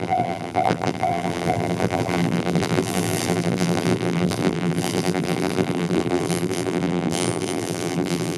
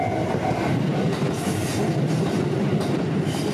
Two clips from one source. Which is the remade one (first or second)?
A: first